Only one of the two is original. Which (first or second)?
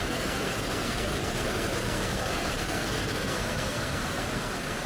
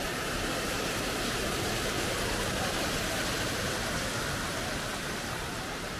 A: second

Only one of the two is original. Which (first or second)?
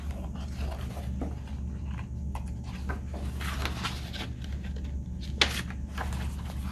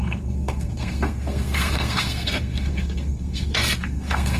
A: first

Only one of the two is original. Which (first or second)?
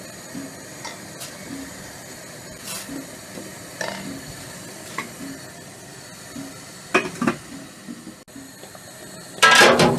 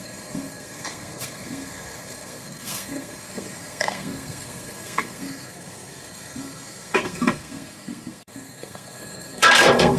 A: first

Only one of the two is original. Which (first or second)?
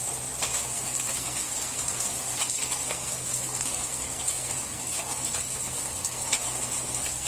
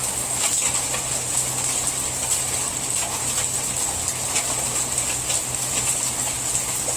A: second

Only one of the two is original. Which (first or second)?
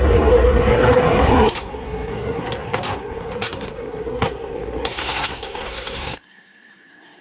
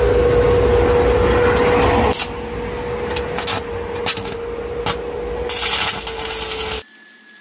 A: second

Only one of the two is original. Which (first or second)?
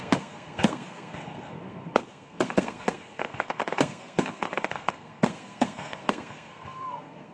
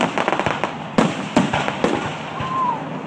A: second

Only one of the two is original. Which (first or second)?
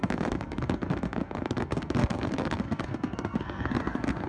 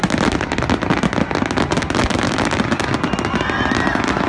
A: second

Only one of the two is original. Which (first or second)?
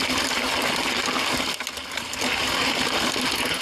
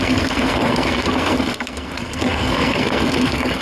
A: first